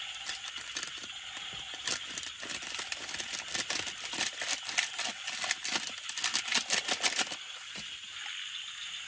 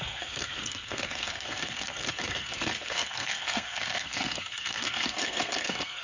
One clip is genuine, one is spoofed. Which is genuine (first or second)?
first